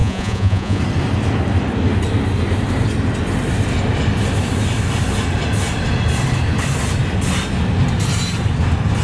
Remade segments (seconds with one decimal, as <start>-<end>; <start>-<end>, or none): 0.0-0.8

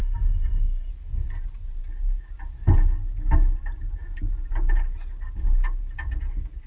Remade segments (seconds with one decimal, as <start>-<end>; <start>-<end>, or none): 0.0-0.9

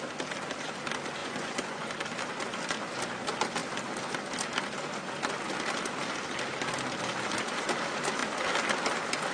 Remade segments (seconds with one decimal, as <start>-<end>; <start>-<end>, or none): 1.2-1.9

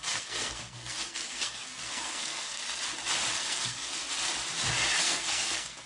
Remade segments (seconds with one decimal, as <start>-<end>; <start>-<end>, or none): 0.0-2.6; 3.3-4.0; 5.0-5.9